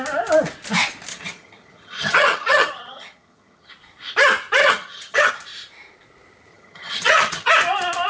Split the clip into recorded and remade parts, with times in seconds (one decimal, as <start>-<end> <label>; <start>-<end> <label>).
0.0-1.1 recorded; 1.1-3.7 remade; 3.7-4.6 recorded; 4.6-5.3 remade; 5.3-6.5 recorded; 6.5-7.5 remade; 7.5-8.1 recorded